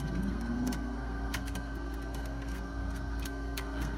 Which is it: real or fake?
fake